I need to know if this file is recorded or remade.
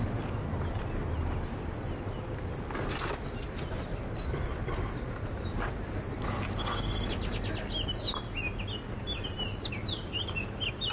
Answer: recorded